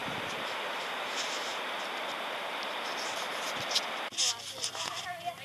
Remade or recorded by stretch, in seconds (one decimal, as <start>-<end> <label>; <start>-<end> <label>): 0.0-5.4 recorded